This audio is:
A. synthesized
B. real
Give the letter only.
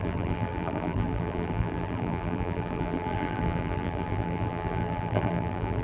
A